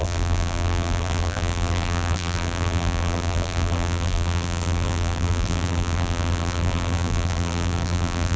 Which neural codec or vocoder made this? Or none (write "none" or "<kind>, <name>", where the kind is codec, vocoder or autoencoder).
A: vocoder, BigVGAN v2